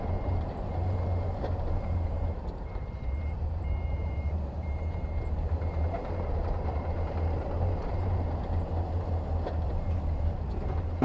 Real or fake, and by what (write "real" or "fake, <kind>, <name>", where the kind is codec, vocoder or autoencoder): fake, vocoder, BigVGAN v2